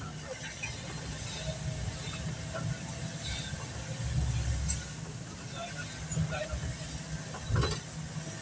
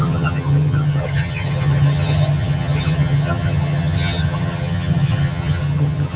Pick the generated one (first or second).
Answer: second